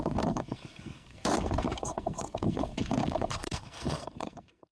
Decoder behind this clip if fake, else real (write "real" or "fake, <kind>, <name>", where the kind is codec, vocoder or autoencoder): fake, codec, SNAC